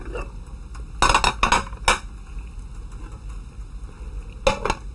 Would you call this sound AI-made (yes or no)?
no